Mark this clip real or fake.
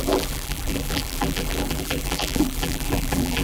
fake